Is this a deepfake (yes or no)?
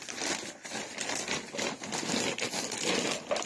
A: no